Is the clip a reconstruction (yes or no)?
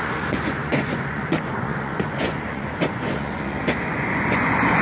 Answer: yes